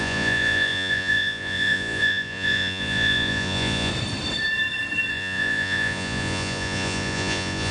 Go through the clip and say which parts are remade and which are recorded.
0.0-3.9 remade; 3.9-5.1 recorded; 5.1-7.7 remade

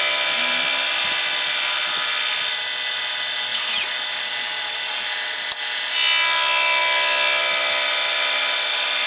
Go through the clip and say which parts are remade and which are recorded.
0.0-9.1 recorded

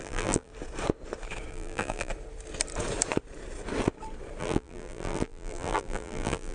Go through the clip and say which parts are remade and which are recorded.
0.0-0.5 remade; 0.5-1.5 recorded; 1.5-2.1 remade; 2.1-4.4 recorded; 4.4-6.5 remade

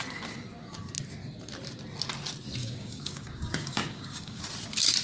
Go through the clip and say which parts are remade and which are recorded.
0.0-2.6 recorded; 2.6-4.4 remade; 4.4-5.0 recorded

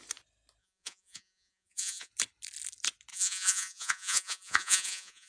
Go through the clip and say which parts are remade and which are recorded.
0.0-0.6 recorded; 0.6-2.1 remade; 2.1-3.1 recorded; 3.1-5.3 remade

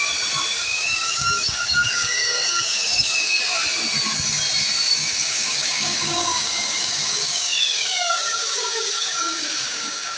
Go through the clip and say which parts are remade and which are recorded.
0.0-0.7 recorded; 0.7-3.4 remade; 3.4-4.9 recorded; 4.9-10.2 remade